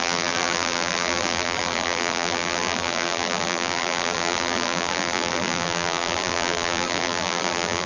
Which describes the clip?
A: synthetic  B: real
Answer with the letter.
A